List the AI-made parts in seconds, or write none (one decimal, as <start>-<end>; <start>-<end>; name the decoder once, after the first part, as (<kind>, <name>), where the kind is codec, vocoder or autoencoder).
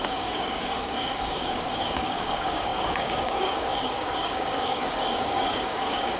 0.0-6.2 (codec, DAC)